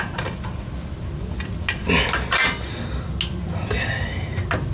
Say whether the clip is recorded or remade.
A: recorded